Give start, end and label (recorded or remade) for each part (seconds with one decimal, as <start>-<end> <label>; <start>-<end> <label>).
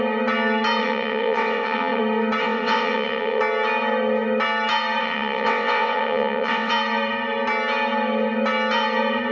0.0-0.8 recorded; 0.8-2.0 remade; 2.0-2.4 recorded; 2.4-3.4 remade; 3.4-5.0 recorded; 5.0-6.7 remade; 6.7-9.3 recorded